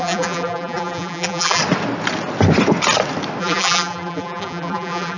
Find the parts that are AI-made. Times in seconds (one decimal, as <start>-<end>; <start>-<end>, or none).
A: 0.0-1.6; 3.4-5.2